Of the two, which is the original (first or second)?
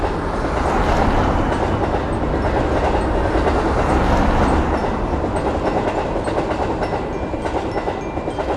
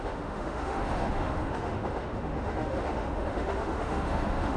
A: first